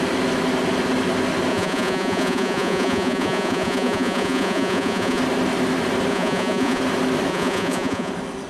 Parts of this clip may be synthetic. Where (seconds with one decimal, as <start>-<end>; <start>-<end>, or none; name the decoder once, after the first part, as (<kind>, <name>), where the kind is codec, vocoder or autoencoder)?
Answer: 1.5-5.2 (vocoder, Vocos); 6.1-6.8; 7.3-8.1